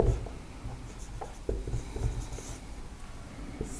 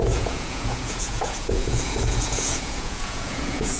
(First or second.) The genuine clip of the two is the first